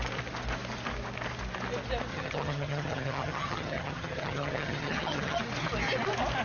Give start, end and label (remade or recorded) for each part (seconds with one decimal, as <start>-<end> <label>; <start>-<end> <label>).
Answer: 0.0-2.1 recorded; 2.1-5.4 remade; 5.4-6.4 recorded